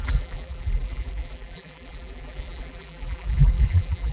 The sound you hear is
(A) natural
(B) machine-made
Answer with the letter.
B